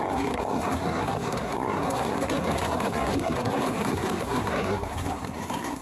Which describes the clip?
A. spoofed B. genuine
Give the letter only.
A